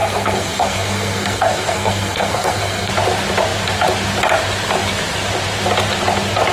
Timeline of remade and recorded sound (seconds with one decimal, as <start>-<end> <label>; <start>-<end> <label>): 0.0-2.9 remade; 2.9-6.5 recorded